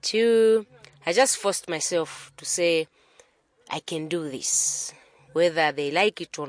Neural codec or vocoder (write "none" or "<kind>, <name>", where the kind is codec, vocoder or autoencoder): none